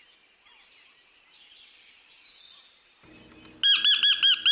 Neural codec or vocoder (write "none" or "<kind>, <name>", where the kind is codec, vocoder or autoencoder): none